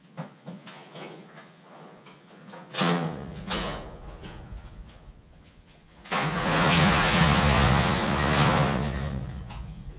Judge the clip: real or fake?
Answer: fake